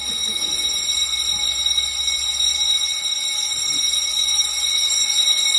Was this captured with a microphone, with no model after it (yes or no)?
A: yes